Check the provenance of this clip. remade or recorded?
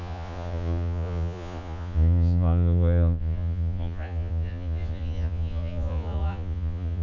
remade